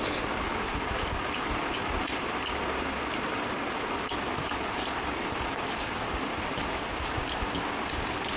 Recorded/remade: recorded